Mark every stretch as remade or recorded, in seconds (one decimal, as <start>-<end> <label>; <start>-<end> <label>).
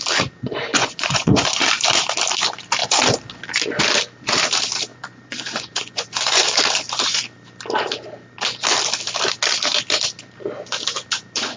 0.0-0.7 recorded; 0.7-1.7 remade; 1.7-4.9 recorded; 4.9-6.6 remade; 6.6-11.6 recorded